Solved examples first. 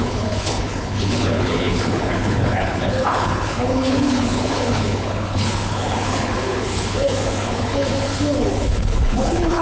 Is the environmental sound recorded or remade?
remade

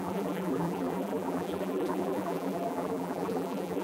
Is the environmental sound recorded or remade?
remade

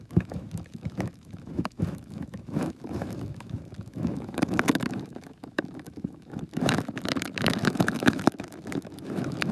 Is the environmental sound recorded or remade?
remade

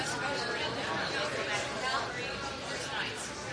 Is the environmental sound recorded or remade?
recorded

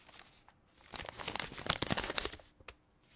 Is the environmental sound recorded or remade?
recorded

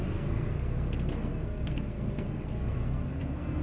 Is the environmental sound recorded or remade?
remade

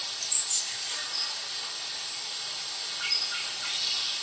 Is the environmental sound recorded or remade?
recorded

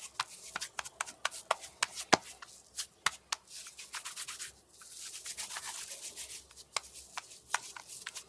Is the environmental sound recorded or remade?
recorded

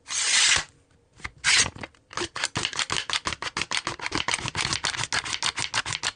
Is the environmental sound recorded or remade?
recorded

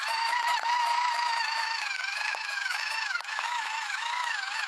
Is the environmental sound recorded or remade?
remade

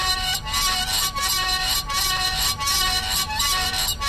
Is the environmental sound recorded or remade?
recorded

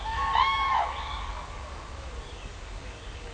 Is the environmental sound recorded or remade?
remade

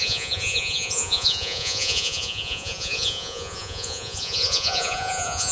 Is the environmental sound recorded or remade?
remade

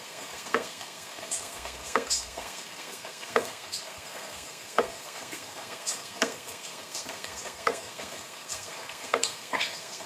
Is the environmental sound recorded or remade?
remade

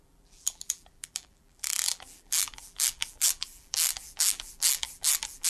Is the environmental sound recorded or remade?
remade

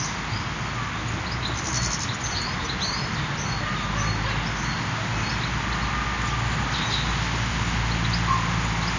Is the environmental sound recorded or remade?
recorded